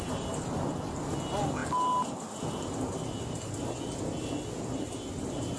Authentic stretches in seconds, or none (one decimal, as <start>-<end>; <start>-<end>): 0.0-5.6